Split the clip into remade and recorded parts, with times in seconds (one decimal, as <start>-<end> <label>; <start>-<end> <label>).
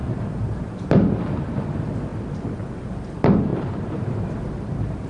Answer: 0.0-0.7 remade; 0.7-3.5 recorded; 3.5-4.3 remade; 4.3-5.1 recorded